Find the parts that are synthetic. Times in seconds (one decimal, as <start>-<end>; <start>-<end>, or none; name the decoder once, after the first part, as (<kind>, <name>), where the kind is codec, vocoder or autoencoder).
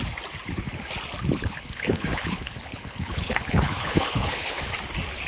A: 1.4-4.6 (codec, HILCodec)